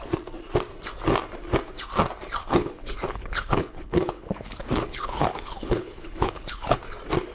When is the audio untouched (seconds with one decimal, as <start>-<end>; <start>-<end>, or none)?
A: 0.0-2.4; 6.8-7.3